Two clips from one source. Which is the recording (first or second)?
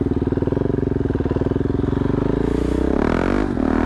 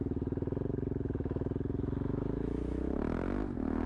first